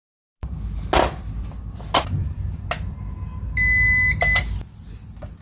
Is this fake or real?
real